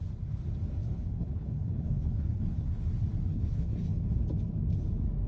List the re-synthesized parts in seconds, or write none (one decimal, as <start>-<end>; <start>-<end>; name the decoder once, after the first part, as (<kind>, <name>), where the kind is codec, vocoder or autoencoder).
0.8-2.8 (codec, HILCodec); 3.3-4.2